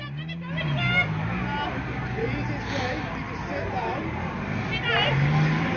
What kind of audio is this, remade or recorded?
recorded